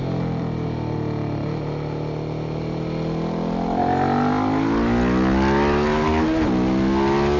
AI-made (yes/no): no